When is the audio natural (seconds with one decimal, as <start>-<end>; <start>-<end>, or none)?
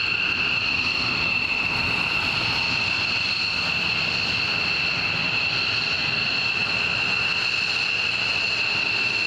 0.0-6.6; 7.2-9.3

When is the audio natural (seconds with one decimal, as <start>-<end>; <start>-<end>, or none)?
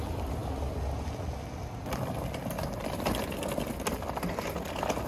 0.0-5.1